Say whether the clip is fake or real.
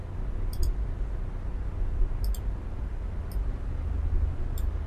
real